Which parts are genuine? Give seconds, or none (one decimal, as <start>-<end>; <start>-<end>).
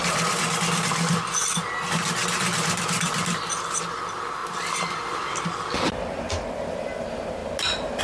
0.0-8.0